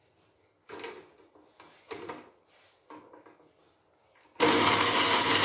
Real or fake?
real